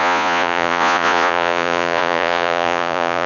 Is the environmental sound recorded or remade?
remade